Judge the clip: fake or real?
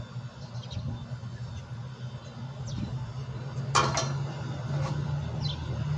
real